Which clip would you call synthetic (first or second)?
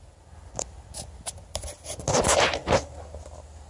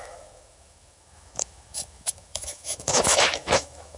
second